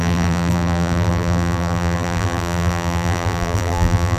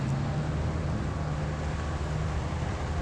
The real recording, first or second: second